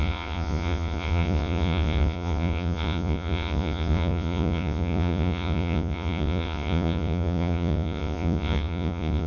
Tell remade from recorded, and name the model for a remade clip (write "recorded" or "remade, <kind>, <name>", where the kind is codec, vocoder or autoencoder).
remade, vocoder, Vocos